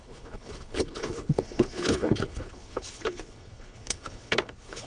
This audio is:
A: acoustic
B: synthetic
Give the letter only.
B